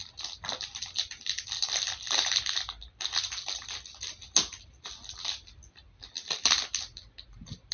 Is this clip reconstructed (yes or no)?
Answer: no